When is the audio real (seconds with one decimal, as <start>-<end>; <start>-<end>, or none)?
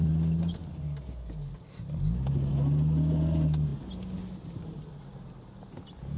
0.0-6.2